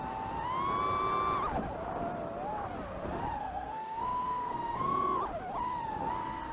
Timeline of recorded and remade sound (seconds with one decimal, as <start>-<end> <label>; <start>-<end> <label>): 0.0-3.4 recorded; 3.4-4.8 remade; 4.8-6.5 recorded